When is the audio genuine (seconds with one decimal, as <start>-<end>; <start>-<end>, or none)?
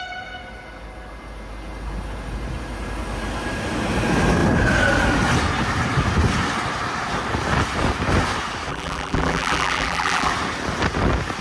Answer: 0.0-8.7; 10.3-11.4